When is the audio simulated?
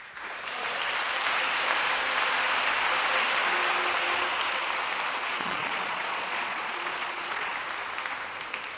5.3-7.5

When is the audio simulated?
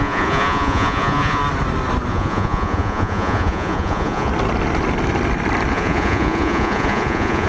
0.0-1.4; 2.1-4.3; 5.7-7.5